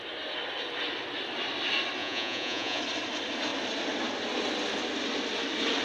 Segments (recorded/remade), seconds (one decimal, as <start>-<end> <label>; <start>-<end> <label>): 0.0-2.0 recorded; 2.0-2.8 remade; 2.8-5.8 recorded